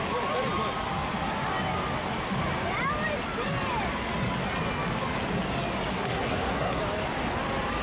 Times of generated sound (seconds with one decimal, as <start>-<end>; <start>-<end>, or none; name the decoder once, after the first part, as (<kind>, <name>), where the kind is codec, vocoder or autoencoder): 5.9-6.8 (codec, SNAC)